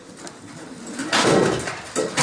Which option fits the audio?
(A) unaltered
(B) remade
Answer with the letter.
A